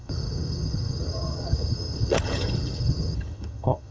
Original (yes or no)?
no